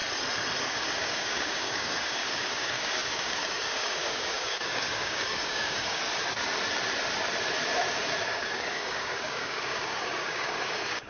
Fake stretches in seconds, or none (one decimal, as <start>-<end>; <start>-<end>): 0.6-6.0; 8.3-11.1